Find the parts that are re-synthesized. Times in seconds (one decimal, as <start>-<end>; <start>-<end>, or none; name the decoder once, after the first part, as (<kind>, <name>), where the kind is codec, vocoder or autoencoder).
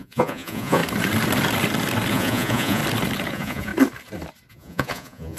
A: 0.0-0.8 (vocoder, Vocos); 2.1-2.8; 3.3-3.7; 4.5-5.4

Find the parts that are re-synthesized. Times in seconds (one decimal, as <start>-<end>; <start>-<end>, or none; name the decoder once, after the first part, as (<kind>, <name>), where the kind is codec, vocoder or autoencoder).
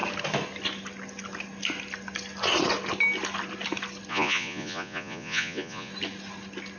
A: 4.1-5.9 (vocoder, Vocos)